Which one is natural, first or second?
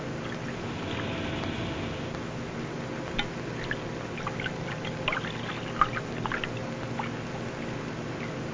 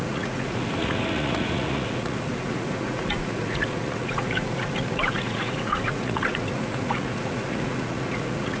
first